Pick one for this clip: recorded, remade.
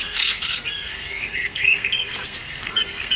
remade